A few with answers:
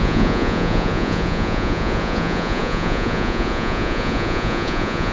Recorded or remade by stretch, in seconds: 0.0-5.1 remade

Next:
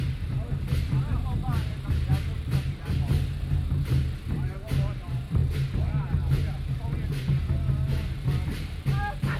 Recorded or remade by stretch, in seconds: 0.0-5.4 remade; 5.4-6.0 recorded; 6.0-9.4 remade